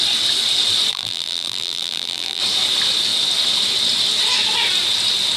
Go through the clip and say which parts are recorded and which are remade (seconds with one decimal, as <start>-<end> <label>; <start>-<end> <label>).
0.0-0.9 recorded; 0.9-2.4 remade; 2.4-5.4 recorded